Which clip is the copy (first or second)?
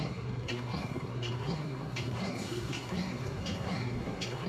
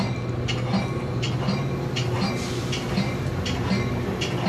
first